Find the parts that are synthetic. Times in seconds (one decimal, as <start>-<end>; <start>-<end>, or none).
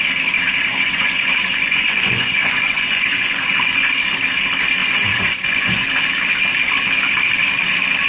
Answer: 0.7-3.9; 4.8-5.9